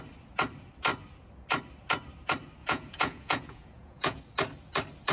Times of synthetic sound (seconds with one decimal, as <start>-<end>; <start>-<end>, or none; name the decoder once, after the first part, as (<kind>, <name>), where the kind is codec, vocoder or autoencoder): 2.6-4.2 (vocoder, Vocos)